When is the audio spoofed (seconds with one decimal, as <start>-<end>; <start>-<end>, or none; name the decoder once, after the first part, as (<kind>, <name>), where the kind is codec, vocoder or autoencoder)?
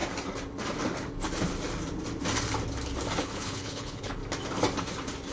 3.2-4.2 (codec, HILCodec)